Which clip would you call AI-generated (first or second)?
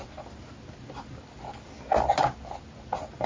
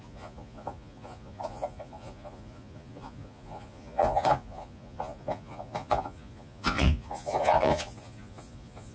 second